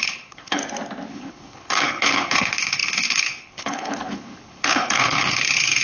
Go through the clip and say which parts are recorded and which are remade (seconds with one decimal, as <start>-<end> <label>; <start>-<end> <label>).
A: 0.0-0.6 remade; 0.6-1.1 recorded; 1.1-5.8 remade